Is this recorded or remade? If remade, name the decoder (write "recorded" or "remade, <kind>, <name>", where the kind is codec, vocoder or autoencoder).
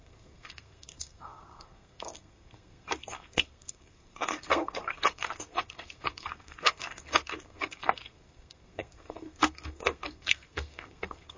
remade, codec, SNAC